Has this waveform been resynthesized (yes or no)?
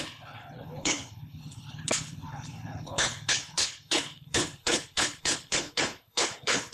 yes